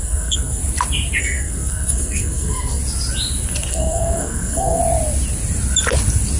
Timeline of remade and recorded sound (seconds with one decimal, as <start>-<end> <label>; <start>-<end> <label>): 0.0-0.6 remade; 0.6-1.2 recorded; 1.2-2.8 remade; 2.8-3.7 recorded; 3.7-4.8 remade; 4.8-6.4 recorded